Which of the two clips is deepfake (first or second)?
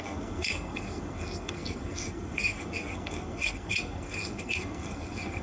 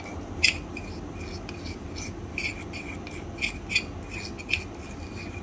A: first